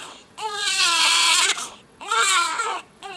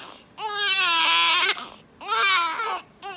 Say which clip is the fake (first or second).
first